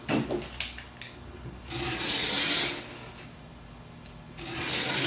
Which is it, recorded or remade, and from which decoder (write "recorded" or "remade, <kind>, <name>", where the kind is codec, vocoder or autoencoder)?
recorded